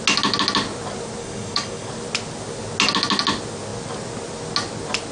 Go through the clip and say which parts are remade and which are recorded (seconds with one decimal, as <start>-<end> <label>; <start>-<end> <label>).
0.0-1.2 recorded; 1.2-1.9 remade; 1.9-5.1 recorded